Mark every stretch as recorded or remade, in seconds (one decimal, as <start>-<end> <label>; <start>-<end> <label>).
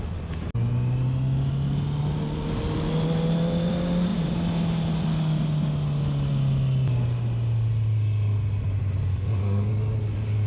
0.0-9.1 recorded; 9.1-9.7 remade; 9.7-10.5 recorded